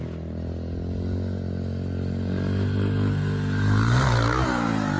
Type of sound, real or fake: real